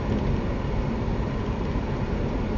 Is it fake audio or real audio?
real